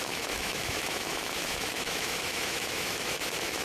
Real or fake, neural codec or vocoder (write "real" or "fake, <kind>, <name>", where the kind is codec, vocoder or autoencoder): fake, autoencoder, DAC-VAE